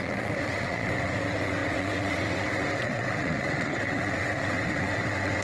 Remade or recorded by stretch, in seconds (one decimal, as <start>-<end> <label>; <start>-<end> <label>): 0.0-5.4 remade